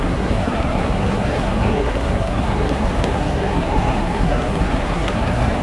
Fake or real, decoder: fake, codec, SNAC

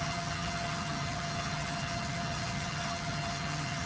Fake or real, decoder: fake, vocoder, HiFi-GAN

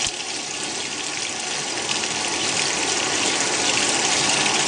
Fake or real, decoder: real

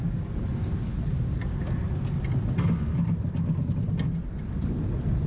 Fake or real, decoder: real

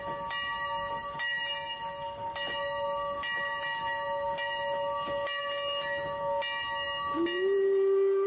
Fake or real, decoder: real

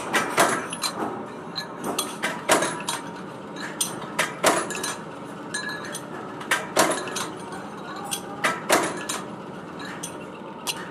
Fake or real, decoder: real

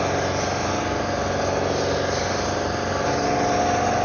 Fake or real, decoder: real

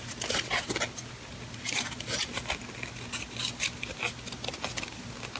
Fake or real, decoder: real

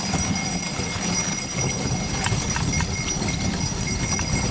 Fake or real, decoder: real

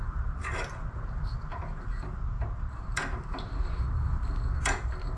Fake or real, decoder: real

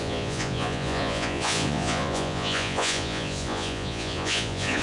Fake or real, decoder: fake, vocoder, Vocos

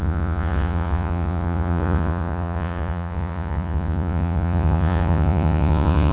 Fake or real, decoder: fake, vocoder, Vocos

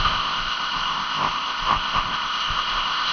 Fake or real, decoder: fake, codec, ZipCodec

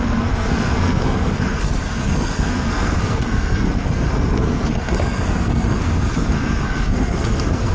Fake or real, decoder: fake, codec, SNAC